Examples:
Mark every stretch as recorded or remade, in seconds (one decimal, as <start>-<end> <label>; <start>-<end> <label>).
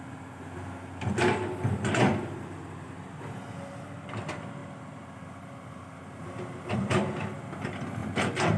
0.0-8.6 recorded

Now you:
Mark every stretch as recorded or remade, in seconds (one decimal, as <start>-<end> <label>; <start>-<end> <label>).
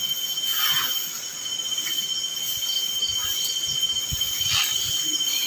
0.0-5.5 recorded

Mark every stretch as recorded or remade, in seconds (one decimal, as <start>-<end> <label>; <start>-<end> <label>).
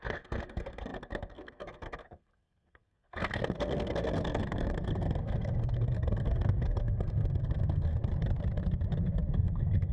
0.0-8.1 remade; 8.1-9.3 recorded; 9.3-9.9 remade